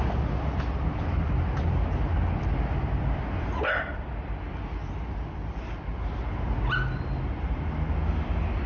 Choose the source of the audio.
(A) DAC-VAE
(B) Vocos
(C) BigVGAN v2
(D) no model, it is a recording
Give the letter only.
D